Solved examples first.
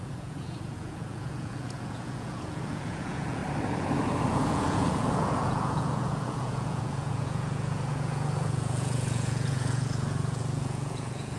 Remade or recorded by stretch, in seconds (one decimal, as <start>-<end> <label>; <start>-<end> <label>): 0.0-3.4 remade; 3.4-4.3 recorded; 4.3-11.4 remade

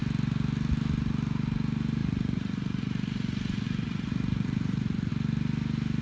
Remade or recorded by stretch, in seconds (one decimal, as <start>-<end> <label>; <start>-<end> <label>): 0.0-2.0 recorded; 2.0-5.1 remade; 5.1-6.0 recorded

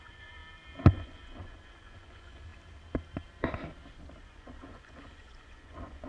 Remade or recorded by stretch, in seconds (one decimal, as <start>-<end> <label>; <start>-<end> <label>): 0.0-0.4 remade; 0.4-0.9 recorded; 0.9-2.5 remade; 2.5-4.2 recorded; 4.2-6.1 remade

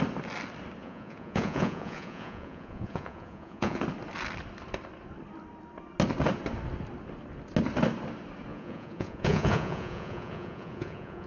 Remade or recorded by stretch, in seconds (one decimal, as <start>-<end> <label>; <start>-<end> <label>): 0.0-0.8 recorded; 0.8-3.8 remade; 3.8-8.5 recorded; 8.5-11.3 remade

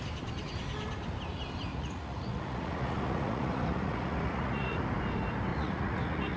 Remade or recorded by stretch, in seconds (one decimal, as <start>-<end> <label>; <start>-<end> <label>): 0.0-1.7 recorded; 1.7-4.8 remade; 4.8-5.5 recorded; 5.5-6.4 remade

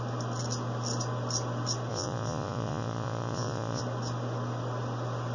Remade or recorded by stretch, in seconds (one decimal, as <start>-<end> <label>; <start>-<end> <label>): 0.0-1.9 recorded; 1.9-3.8 remade; 3.8-5.3 recorded